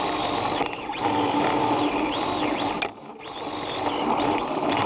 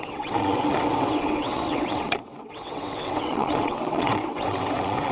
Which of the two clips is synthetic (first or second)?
second